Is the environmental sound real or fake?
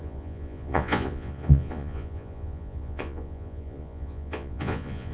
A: fake